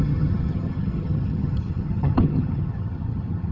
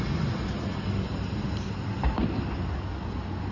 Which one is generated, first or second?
first